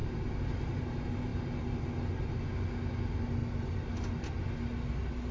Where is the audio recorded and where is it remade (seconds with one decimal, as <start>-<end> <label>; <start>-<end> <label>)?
0.0-5.3 recorded